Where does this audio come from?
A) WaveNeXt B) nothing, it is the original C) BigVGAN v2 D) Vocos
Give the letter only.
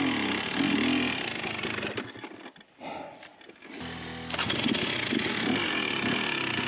B